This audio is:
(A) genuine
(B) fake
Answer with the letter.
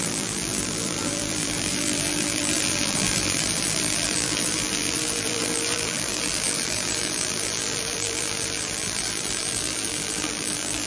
B